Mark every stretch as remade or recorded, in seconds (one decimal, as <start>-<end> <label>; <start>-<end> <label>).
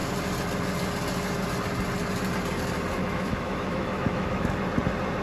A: 0.0-3.0 recorded; 3.0-4.6 remade; 4.6-5.2 recorded